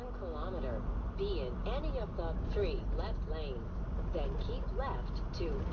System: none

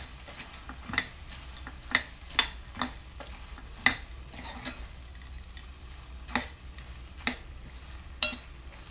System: none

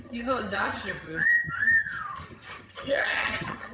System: vocoder, HiFi-GAN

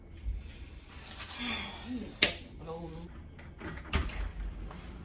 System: none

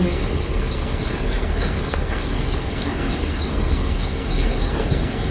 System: codec, SNAC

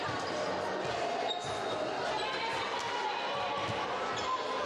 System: none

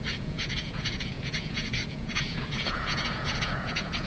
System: vocoder, Vocos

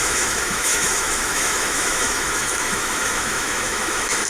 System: autoencoder, DAC-VAE